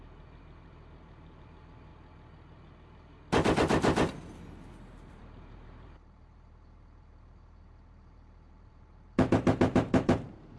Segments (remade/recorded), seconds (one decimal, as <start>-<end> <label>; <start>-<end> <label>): 0.0-1.9 remade; 1.9-5.1 recorded; 5.1-10.6 remade